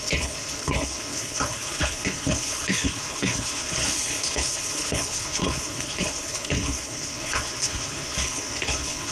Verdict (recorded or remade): remade